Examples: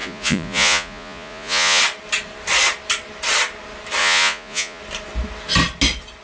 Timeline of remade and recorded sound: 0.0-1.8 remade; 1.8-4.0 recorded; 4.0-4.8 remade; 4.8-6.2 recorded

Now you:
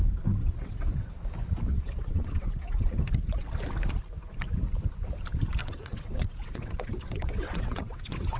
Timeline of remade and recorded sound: 0.0-0.4 recorded; 0.4-1.1 remade; 1.1-1.7 recorded; 1.7-2.9 remade; 2.9-5.6 recorded; 5.6-8.4 remade

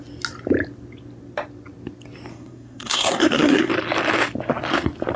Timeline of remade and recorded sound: 0.0-2.3 recorded; 2.3-3.7 remade; 3.7-5.2 recorded